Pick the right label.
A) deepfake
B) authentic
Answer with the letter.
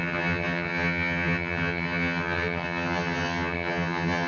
A